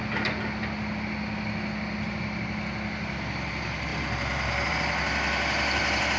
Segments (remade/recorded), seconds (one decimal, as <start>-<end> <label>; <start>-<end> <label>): 0.0-6.2 recorded